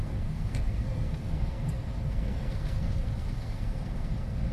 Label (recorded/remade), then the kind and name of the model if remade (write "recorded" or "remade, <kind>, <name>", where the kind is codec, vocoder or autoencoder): remade, codec, SNAC